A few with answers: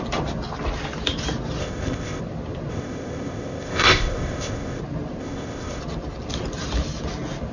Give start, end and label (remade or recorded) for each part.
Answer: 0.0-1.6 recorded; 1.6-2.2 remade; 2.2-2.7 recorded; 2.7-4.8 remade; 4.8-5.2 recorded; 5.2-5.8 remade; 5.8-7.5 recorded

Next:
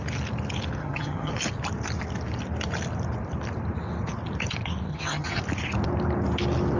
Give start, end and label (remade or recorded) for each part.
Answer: 0.0-0.8 recorded; 0.8-1.3 remade; 1.3-4.9 recorded; 4.9-5.4 remade; 5.4-6.8 recorded

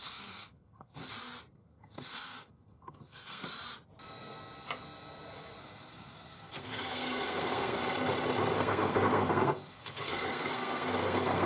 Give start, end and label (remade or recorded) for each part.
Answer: 0.0-1.0 remade; 1.0-1.5 recorded; 1.5-3.4 remade; 3.4-5.6 recorded; 5.6-7.8 remade; 7.8-8.5 recorded; 8.5-11.5 remade

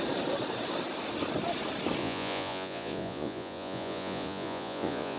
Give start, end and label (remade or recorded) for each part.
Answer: 0.0-2.0 recorded; 2.0-5.2 remade

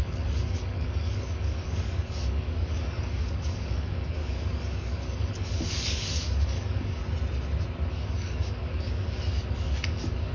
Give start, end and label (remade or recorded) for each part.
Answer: 0.0-7.0 remade; 7.0-7.9 recorded; 7.9-10.3 remade